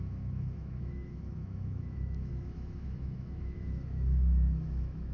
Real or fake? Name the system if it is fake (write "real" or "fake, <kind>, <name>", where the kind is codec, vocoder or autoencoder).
fake, autoencoder, DAC-VAE